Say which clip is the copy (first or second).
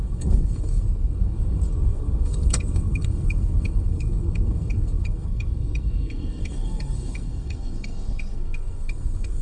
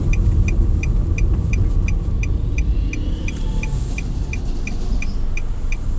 first